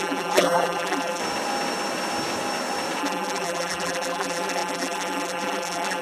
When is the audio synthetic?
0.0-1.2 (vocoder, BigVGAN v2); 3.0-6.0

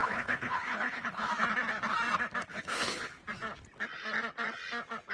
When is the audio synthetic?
0.0-1.3 (codec, HILCodec); 2.5-3.2